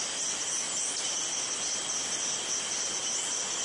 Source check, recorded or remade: recorded